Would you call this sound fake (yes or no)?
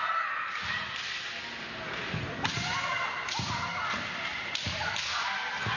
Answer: no